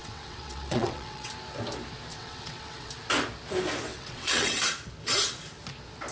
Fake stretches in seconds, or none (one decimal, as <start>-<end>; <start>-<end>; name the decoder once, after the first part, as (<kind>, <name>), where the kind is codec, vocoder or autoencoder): 0.0-1.3 (vocoder, WaveNeXt); 2.1-2.9; 3.9-4.6